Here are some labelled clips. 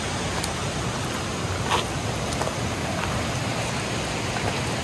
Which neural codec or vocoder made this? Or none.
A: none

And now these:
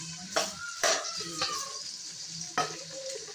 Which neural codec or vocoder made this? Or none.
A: vocoder, BigVGAN v2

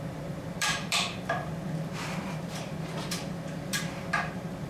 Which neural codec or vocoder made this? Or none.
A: vocoder, BigVGAN v2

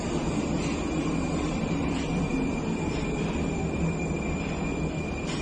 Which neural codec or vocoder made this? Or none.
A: vocoder, BigVGAN v2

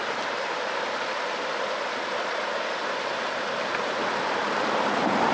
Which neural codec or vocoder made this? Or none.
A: vocoder, BigVGAN v2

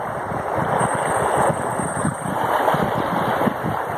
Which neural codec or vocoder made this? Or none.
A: none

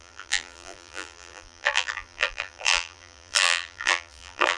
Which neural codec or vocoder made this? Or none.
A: vocoder, BigVGAN v2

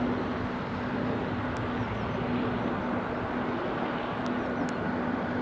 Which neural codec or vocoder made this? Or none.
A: none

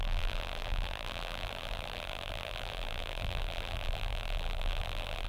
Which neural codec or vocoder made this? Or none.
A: vocoder, BigVGAN v2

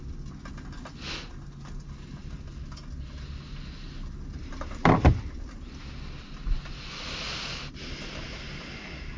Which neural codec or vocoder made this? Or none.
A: none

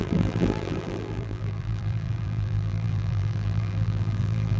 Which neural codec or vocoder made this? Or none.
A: vocoder, BigVGAN v2